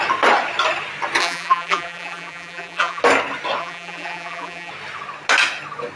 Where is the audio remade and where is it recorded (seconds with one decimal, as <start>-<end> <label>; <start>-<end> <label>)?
0.0-1.2 recorded; 1.2-3.0 remade; 3.0-3.6 recorded; 3.6-4.7 remade; 4.7-6.0 recorded